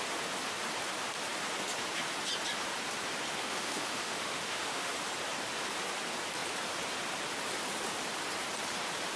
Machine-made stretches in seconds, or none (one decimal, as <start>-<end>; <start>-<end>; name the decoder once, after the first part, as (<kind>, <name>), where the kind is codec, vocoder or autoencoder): 3.4-4.9 (autoencoder, DAC-VAE)